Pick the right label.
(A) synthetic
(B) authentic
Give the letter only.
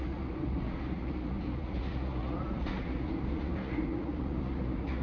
A